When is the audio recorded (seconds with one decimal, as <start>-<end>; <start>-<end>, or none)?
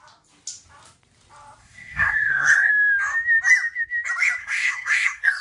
0.0-1.6; 2.7-4.4